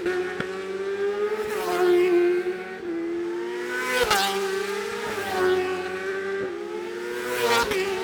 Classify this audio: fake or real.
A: real